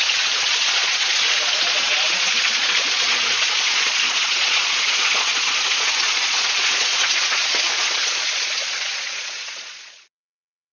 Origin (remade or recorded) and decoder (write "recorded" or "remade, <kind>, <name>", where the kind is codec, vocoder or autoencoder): remade, vocoder, Vocos